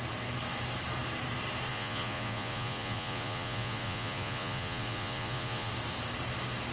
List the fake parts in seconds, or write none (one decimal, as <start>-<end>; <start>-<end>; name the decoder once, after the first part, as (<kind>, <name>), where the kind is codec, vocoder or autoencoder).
1.7-5.7 (vocoder, Vocos)